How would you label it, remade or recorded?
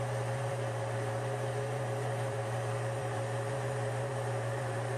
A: remade